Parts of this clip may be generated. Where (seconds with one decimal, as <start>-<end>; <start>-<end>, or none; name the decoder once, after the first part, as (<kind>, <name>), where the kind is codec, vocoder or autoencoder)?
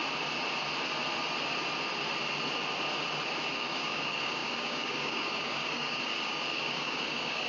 3.5-7.5 (codec, DAC)